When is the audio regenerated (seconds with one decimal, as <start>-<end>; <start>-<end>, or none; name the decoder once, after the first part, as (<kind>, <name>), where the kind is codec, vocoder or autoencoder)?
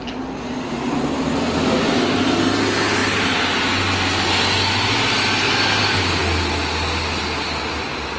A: none